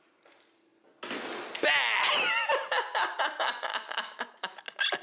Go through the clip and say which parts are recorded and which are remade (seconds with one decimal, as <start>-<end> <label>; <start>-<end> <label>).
0.0-3.7 recorded; 3.7-4.6 remade; 4.6-5.0 recorded